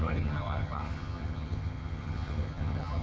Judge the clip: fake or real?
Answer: fake